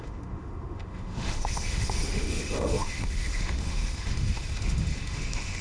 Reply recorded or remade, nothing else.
remade